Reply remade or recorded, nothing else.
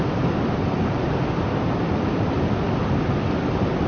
recorded